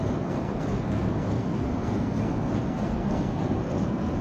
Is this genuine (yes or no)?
no